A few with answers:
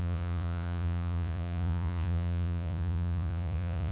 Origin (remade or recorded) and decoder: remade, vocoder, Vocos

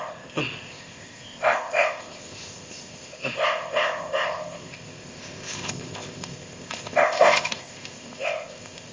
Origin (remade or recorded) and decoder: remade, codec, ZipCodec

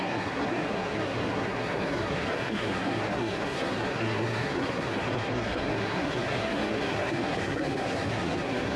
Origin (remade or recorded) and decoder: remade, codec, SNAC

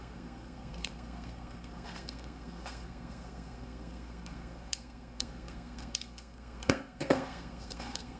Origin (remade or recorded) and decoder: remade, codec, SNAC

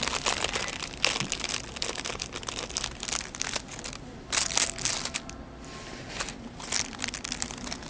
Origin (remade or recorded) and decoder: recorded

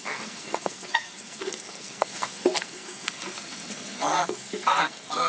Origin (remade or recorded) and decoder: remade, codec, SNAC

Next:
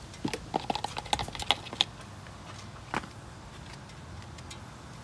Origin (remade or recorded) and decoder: recorded